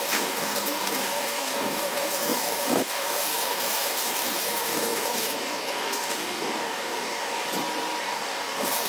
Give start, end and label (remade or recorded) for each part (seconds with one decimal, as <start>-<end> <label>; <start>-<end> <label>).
0.0-7.4 remade; 7.4-8.0 recorded; 8.0-8.9 remade